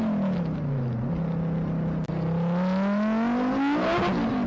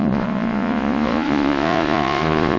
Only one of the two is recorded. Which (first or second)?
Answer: first